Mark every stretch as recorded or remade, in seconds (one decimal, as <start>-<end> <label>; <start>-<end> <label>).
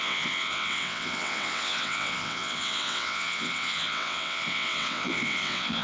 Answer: 0.0-5.8 remade